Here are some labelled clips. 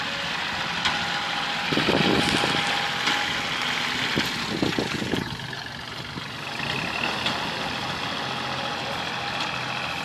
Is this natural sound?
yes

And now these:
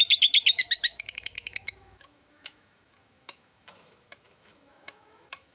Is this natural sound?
no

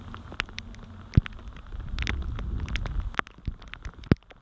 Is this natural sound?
yes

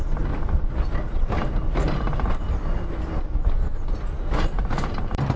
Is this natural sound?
yes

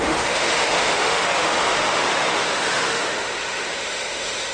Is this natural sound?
no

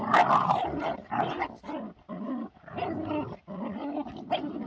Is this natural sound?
yes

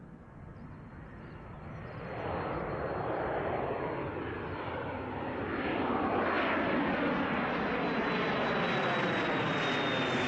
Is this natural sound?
yes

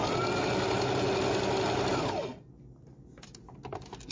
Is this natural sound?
yes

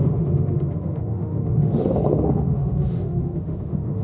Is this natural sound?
no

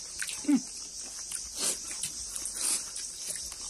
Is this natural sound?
yes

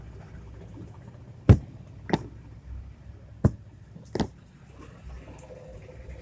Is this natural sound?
yes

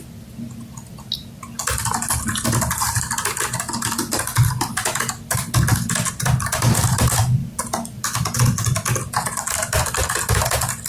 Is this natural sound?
yes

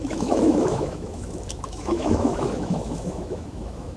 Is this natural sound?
no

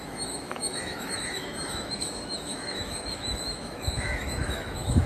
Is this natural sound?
no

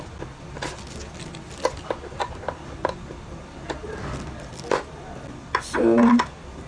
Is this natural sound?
yes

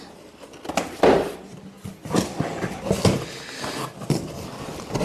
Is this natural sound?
yes